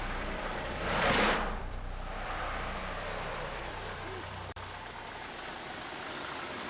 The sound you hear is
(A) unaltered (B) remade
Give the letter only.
B